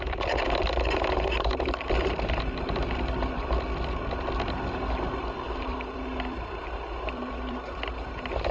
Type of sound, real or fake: fake